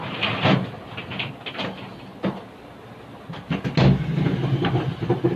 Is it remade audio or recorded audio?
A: recorded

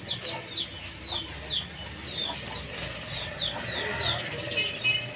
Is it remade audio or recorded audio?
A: recorded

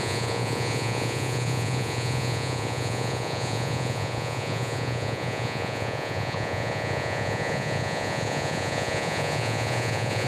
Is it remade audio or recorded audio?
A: remade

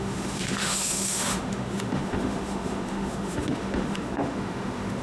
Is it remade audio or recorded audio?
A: remade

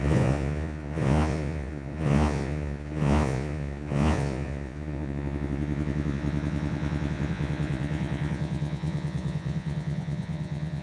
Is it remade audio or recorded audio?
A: remade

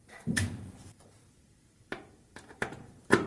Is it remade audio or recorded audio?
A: remade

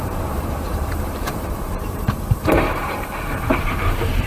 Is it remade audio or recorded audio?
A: remade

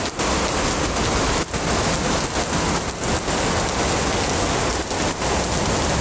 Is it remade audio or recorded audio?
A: recorded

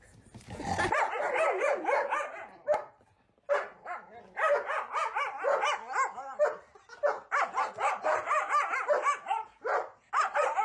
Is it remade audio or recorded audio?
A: recorded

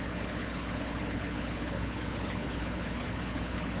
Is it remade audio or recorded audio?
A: remade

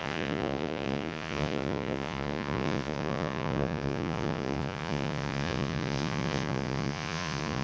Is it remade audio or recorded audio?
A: remade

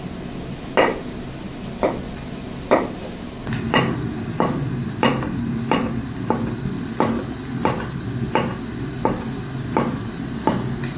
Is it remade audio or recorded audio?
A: recorded